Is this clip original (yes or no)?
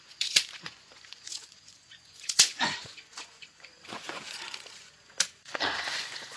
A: no